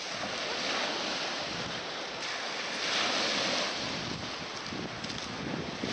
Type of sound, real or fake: real